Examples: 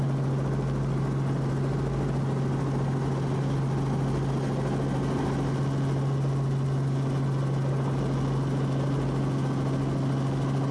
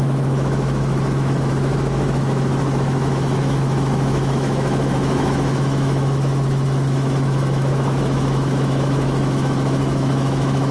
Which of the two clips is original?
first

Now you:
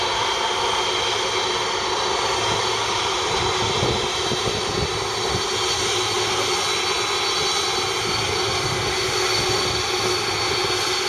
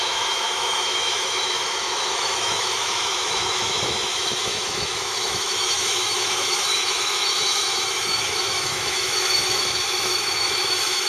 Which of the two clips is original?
first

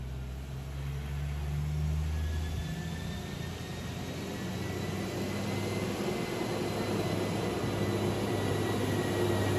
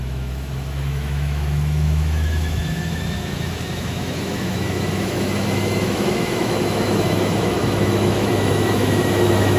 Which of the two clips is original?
first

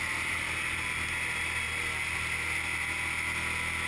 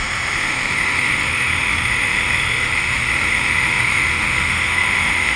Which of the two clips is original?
first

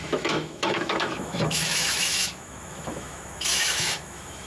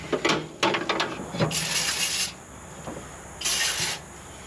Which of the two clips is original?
second